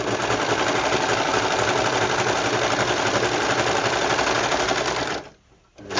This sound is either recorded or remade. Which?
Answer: recorded